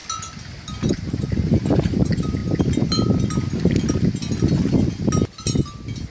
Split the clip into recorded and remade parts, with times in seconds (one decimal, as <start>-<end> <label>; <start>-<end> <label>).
0.0-0.9 recorded; 0.9-2.4 remade; 2.4-6.1 recorded

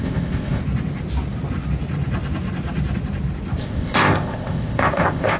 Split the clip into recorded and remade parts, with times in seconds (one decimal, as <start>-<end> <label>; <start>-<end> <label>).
0.0-0.6 remade; 0.6-3.6 recorded; 3.6-5.4 remade

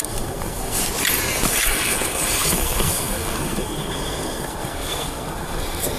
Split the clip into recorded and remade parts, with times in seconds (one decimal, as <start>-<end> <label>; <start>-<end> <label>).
0.0-0.8 remade; 0.8-1.5 recorded; 1.5-6.0 remade